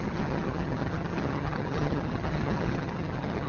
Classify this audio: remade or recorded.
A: remade